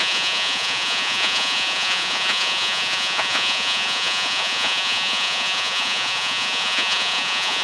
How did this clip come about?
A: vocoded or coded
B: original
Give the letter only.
A